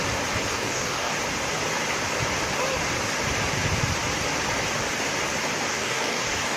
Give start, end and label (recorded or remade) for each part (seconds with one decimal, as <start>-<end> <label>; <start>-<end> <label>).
0.0-0.5 recorded; 0.5-1.1 remade; 1.1-5.7 recorded; 5.7-6.6 remade